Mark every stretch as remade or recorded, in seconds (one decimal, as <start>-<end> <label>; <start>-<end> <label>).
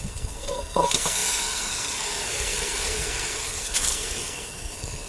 0.0-5.1 remade